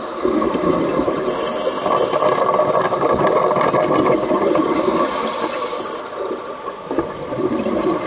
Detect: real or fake real